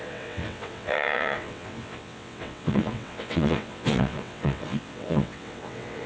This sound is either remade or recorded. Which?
remade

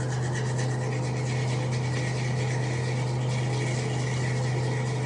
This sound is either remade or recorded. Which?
recorded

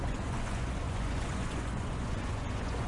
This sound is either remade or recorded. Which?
remade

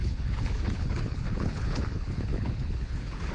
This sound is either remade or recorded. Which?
remade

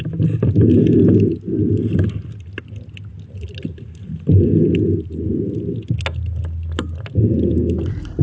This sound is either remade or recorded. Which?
recorded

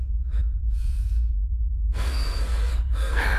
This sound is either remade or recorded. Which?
remade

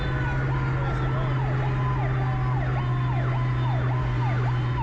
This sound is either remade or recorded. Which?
recorded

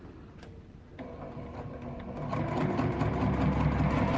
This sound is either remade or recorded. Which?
recorded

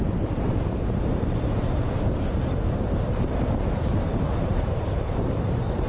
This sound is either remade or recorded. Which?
remade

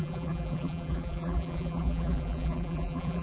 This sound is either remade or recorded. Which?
remade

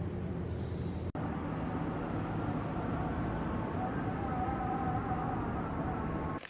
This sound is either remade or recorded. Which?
recorded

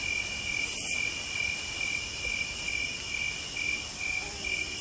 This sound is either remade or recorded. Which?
recorded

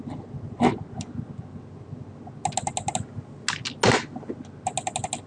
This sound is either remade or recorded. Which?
recorded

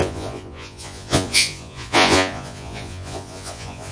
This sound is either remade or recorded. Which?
remade